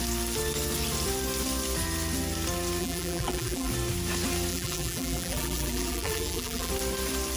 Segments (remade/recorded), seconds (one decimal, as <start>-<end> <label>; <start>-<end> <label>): 0.0-2.8 recorded; 2.8-3.7 remade; 3.7-4.5 recorded; 4.5-6.7 remade; 6.7-7.4 recorded